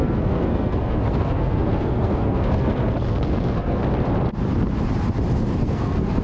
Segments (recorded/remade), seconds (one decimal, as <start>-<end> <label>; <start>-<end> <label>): 0.0-3.8 remade; 3.8-5.6 recorded; 5.6-6.2 remade

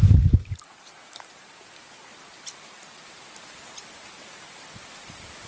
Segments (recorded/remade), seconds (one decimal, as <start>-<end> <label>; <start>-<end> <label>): 0.0-5.5 recorded

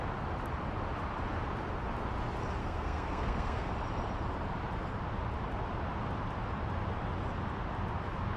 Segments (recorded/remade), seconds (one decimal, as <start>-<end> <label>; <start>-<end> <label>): 0.0-2.6 recorded; 2.6-3.7 remade; 3.7-8.4 recorded

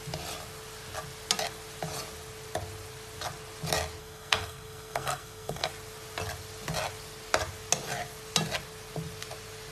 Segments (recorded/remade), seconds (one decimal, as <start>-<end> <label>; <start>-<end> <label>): 0.0-4.0 recorded; 4.0-5.7 remade; 5.7-9.7 recorded

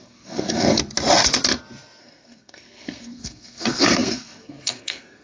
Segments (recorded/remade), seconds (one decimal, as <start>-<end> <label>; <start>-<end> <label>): 0.0-0.8 remade; 0.8-2.0 recorded; 2.0-5.2 remade

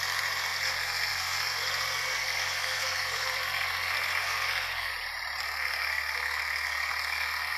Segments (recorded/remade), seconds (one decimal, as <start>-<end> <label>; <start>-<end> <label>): 0.0-4.9 remade; 4.9-5.4 recorded; 5.4-7.6 remade

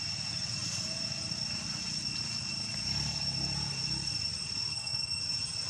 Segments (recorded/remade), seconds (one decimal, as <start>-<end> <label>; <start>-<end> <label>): 0.0-4.7 recorded; 4.7-5.2 remade; 5.2-5.7 recorded